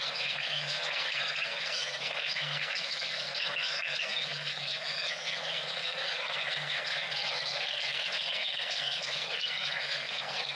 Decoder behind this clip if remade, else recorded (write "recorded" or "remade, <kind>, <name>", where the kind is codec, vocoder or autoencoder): remade, codec, SNAC